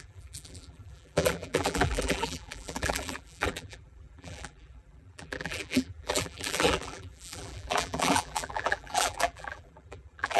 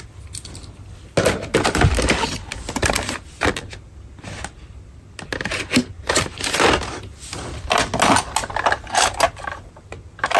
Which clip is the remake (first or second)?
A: first